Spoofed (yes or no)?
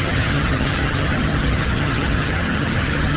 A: yes